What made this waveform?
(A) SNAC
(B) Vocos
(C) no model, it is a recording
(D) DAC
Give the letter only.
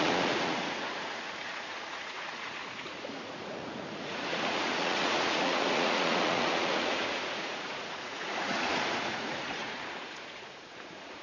B